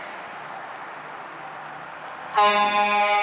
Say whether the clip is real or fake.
real